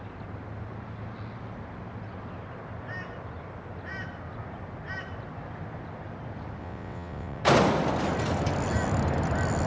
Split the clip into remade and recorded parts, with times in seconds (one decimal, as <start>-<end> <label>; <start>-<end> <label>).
0.0-6.6 recorded; 6.6-7.4 remade; 7.4-9.7 recorded